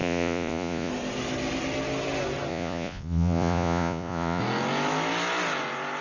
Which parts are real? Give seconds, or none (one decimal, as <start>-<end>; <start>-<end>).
0.9-2.5; 4.4-6.0